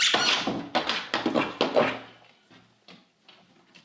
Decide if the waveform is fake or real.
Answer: real